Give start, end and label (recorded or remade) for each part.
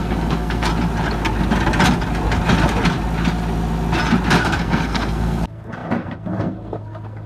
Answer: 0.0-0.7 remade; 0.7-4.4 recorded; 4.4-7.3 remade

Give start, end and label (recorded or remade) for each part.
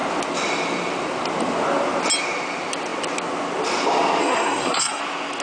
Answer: 0.0-4.2 recorded; 4.2-5.0 remade; 5.0-5.4 recorded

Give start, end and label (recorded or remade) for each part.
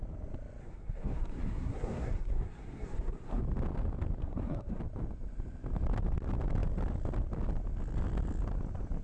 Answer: 0.0-0.6 recorded; 0.6-3.4 remade; 3.4-4.2 recorded; 4.2-4.8 remade; 4.8-9.0 recorded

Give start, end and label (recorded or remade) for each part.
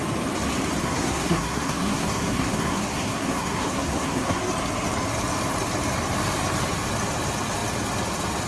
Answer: 0.0-0.8 recorded; 0.8-4.4 remade; 4.4-8.5 recorded